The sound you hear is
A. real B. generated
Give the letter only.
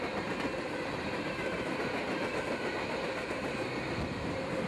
A